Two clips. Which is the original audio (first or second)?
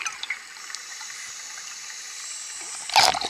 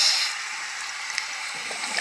second